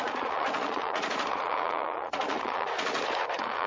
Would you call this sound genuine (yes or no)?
no